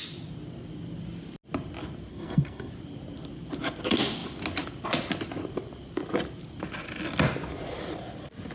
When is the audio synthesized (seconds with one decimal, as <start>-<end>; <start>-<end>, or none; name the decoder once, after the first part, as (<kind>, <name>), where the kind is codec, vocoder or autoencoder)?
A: 2.1-2.7 (codec, SNAC)